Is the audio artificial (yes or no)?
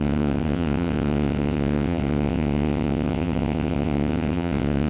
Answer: yes